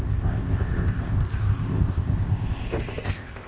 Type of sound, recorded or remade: remade